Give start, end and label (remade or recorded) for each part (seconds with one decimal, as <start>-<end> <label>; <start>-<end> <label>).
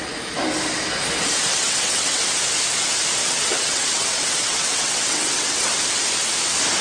0.0-1.5 recorded; 1.5-2.2 remade; 2.2-3.2 recorded; 3.2-5.8 remade; 5.8-6.8 recorded